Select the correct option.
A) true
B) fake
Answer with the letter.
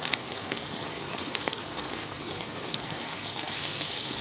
B